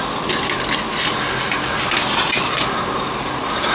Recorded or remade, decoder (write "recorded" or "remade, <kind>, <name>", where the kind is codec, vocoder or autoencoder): recorded